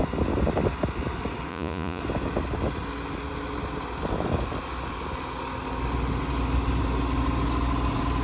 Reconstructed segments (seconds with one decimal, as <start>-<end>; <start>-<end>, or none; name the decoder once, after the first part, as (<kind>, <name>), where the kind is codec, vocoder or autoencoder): 1.5-2.0 (vocoder, Vocos)